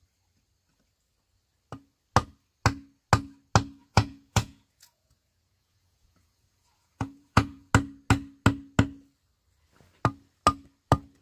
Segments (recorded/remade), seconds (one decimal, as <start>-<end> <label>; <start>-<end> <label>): 0.0-3.8 recorded; 3.8-7.7 remade; 7.7-11.2 recorded